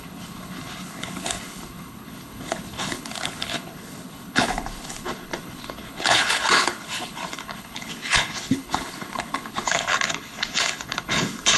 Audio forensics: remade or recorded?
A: remade